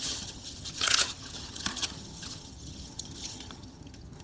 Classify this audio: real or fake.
fake